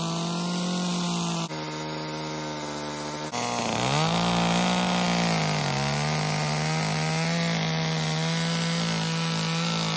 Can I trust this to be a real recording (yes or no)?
yes